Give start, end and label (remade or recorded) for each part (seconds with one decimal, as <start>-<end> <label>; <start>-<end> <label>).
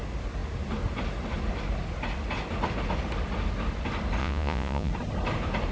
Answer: 0.0-4.2 recorded; 4.2-4.9 remade; 4.9-5.7 recorded